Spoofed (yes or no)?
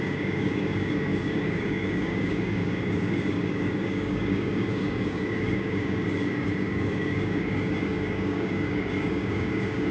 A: yes